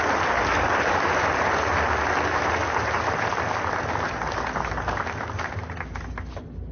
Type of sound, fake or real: real